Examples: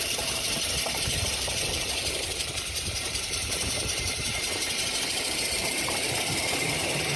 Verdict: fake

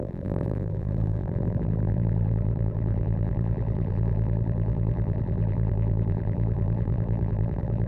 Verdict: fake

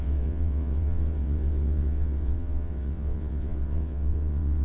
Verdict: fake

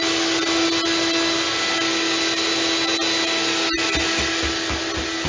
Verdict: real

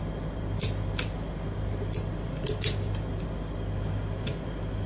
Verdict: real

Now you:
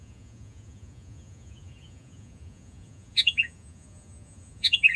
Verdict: fake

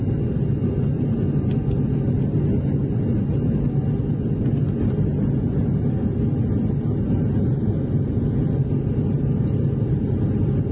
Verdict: real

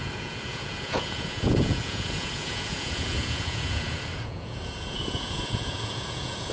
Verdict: fake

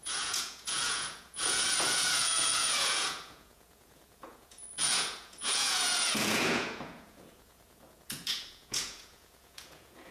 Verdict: fake